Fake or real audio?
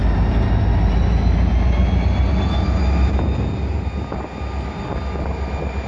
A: real